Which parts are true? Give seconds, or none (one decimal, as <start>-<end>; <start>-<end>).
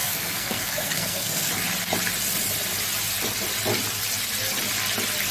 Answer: 1.5-5.3